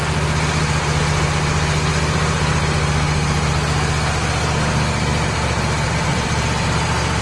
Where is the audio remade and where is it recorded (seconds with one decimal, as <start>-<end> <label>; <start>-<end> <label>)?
0.0-5.1 recorded; 5.1-7.2 remade